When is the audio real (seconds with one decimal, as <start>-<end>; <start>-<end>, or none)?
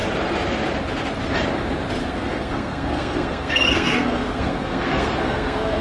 0.0-2.0